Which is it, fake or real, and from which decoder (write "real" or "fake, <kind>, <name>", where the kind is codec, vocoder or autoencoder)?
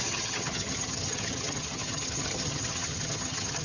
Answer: fake, vocoder, HiFi-GAN